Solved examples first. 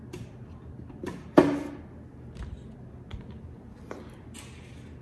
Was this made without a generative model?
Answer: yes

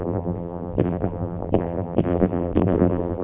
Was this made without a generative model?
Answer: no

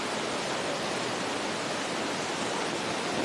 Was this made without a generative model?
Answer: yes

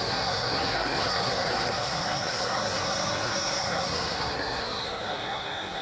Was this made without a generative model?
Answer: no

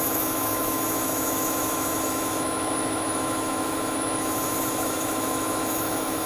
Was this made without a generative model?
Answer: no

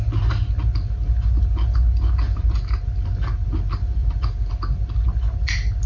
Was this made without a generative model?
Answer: yes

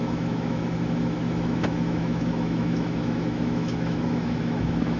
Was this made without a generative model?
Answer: no